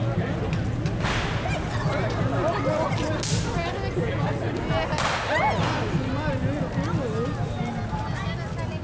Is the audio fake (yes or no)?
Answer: no